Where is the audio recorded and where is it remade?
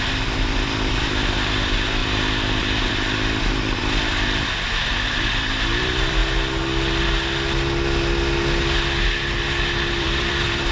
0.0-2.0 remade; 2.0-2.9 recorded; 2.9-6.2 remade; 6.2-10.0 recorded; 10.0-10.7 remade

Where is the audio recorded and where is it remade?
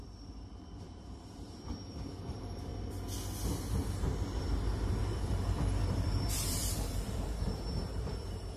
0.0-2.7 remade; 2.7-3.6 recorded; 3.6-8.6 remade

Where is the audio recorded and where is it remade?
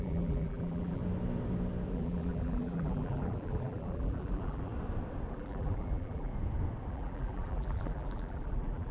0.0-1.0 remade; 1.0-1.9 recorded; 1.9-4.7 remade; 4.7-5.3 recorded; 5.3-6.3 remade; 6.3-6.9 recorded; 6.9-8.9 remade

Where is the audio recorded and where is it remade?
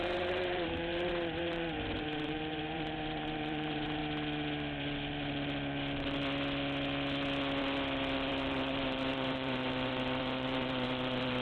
0.0-4.0 remade; 4.0-8.3 recorded; 8.3-11.4 remade